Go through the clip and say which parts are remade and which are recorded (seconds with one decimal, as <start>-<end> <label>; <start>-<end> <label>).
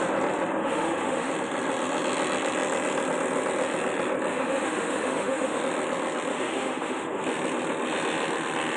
0.0-0.6 recorded; 0.6-1.3 remade; 1.3-4.3 recorded; 4.3-5.6 remade; 5.6-6.3 recorded; 6.3-7.2 remade; 7.2-8.8 recorded